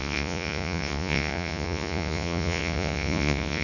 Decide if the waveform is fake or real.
fake